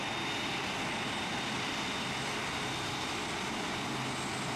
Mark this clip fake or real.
real